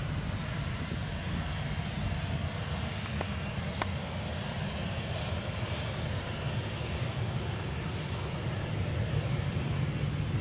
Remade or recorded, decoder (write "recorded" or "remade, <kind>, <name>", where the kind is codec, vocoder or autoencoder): recorded